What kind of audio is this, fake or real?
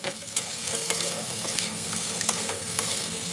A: fake